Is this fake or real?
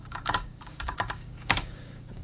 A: fake